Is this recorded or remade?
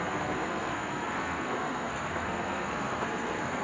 remade